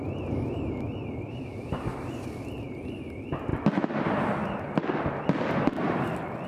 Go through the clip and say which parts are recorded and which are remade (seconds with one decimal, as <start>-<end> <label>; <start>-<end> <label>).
0.0-6.5 recorded